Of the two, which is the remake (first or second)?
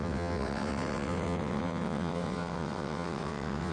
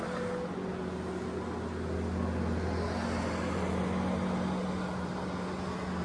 first